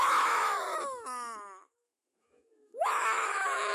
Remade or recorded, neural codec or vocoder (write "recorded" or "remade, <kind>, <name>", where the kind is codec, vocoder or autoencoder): remade, autoencoder, DAC-VAE